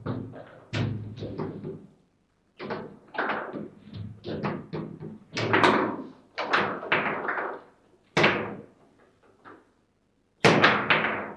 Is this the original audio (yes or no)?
yes